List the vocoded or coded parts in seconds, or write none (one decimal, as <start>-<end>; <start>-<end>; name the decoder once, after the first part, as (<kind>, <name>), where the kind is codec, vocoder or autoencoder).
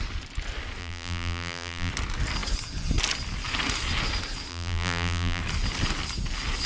0.8-1.9 (vocoder, BigVGAN v2); 4.5-5.4